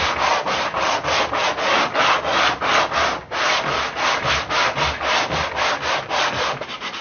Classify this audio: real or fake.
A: real